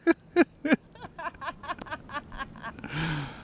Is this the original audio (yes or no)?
yes